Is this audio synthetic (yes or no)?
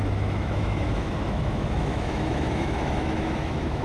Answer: yes